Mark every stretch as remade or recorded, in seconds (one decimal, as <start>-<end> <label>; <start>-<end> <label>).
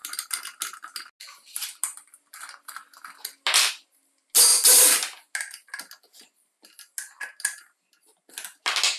0.0-9.0 recorded